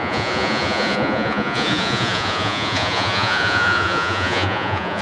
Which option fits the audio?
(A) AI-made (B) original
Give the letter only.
A